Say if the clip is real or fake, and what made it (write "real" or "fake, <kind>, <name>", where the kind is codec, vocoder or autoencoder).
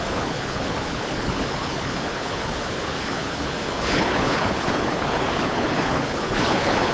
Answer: fake, codec, HILCodec